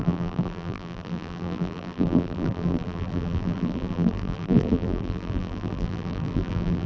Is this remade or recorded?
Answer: remade